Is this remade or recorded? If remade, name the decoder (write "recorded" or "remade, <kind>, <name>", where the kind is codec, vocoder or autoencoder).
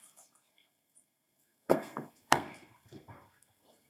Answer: remade, codec, SNAC